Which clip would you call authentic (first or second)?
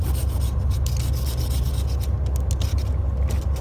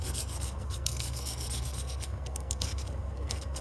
first